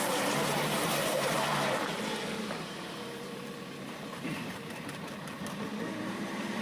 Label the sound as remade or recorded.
remade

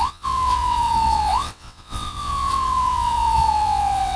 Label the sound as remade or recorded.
remade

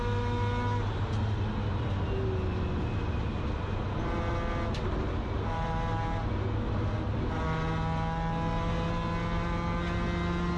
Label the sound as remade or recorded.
recorded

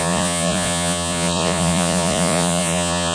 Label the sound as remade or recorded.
remade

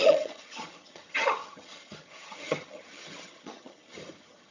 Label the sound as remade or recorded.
remade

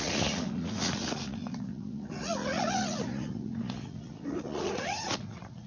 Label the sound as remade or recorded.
remade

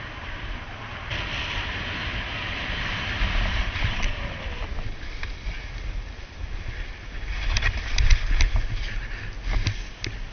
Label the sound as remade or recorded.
recorded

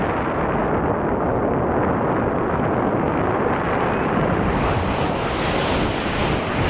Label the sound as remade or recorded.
recorded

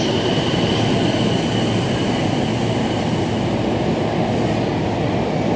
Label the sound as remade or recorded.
recorded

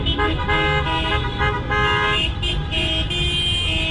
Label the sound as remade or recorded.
recorded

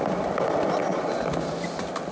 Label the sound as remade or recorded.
recorded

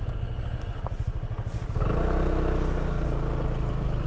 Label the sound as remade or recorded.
recorded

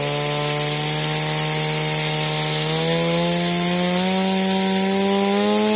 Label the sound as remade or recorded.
recorded